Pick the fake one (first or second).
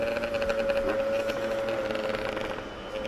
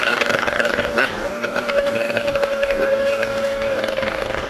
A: second